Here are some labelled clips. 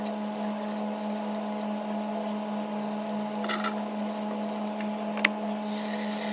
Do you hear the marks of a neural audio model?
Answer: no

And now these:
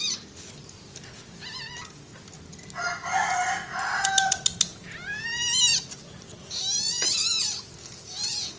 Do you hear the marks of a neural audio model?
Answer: no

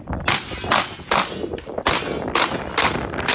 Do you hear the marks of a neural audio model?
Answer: no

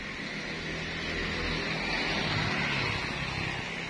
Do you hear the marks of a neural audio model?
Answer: no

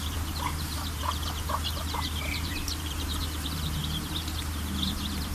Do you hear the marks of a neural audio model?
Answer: yes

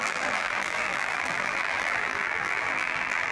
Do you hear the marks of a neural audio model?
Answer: yes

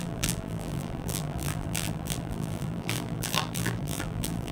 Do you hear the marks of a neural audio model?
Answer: yes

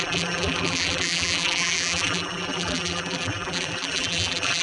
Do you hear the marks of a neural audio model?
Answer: yes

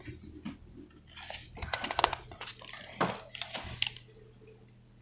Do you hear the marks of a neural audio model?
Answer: no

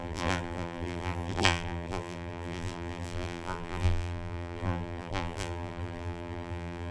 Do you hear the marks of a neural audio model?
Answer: yes